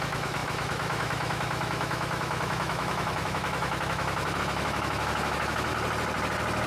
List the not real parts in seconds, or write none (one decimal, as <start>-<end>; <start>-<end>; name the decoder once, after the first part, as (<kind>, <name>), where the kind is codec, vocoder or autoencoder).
0.0-5.7 (autoencoder, DAC-VAE)